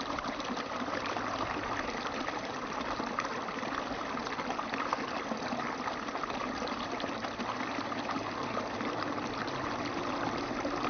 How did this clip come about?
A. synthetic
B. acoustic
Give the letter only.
B